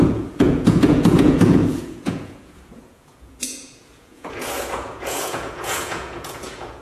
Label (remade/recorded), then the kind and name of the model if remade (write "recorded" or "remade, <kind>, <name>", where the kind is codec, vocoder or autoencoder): remade, vocoder, Vocos